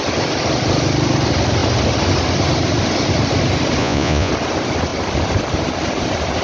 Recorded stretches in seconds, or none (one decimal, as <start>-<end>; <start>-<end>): 0.0-3.8; 4.3-6.4